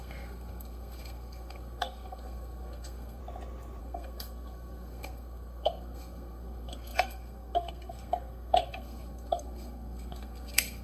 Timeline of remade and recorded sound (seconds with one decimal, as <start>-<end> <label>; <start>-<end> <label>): 0.0-3.2 remade; 3.2-3.8 recorded; 3.8-10.8 remade